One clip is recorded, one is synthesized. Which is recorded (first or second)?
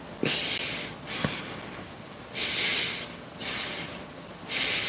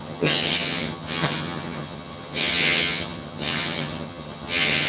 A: first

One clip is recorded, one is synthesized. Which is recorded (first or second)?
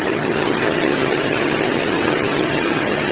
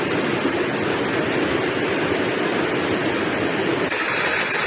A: second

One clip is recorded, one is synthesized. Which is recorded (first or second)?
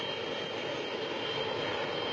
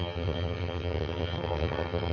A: first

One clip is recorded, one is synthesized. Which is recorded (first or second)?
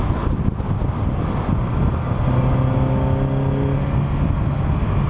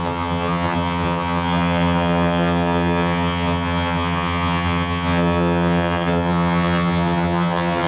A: first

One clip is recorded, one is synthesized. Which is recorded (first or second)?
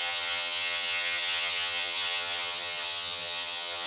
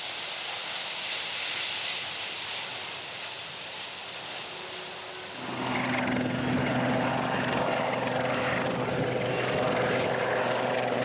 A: second